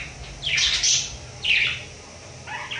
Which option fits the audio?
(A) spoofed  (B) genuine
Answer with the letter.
B